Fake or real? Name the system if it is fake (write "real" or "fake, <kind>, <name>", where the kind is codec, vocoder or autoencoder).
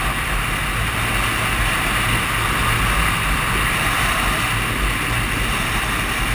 real